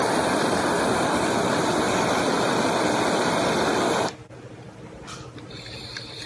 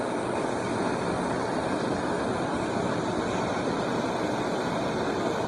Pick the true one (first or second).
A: second